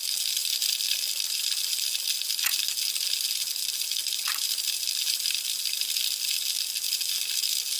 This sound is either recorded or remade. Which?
recorded